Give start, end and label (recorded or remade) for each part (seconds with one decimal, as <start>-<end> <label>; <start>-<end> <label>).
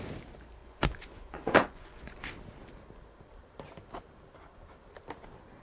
0.0-0.6 recorded; 0.6-2.2 remade; 2.2-5.6 recorded